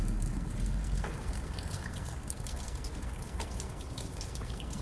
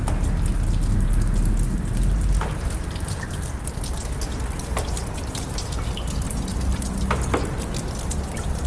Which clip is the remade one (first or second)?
first